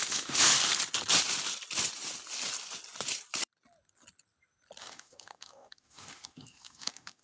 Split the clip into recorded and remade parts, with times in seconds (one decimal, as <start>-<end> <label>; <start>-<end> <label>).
0.0-0.5 remade; 0.5-4.8 recorded; 4.8-7.2 remade